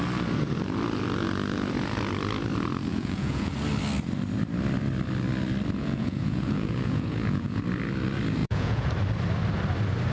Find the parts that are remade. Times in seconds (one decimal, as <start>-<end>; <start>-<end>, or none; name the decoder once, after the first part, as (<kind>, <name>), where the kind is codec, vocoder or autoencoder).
2.9-3.5 (vocoder, Vocos); 5.8-7.6; 8.4-8.9